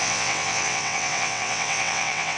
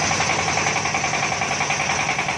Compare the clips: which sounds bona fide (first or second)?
second